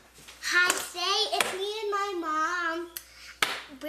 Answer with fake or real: real